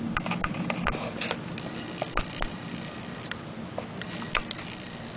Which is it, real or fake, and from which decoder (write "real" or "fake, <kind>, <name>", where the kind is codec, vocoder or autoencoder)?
real